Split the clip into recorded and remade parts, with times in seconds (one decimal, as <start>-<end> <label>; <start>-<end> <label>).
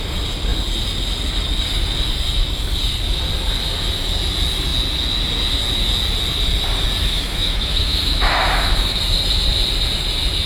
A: 0.0-7.0 recorded; 7.0-9.0 remade; 9.0-10.5 recorded